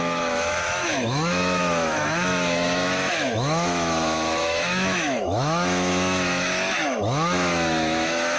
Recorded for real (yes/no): no